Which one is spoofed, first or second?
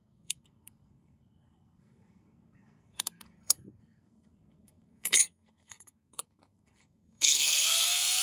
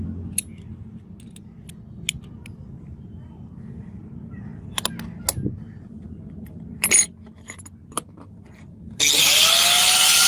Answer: first